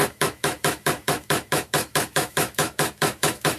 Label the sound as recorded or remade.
remade